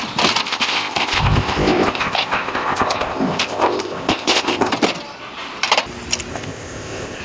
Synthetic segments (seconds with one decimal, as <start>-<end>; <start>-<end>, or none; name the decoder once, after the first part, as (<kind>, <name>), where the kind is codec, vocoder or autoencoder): 0.4-4.7 (codec, ZipCodec); 6.3-7.2